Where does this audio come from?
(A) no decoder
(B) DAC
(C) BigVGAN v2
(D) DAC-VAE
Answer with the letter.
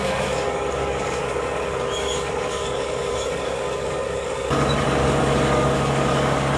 B